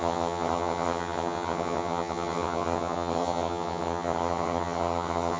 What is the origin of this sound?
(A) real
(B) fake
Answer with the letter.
B